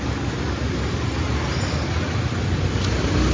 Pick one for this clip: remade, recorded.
recorded